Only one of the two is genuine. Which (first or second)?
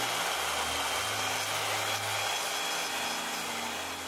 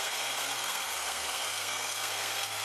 first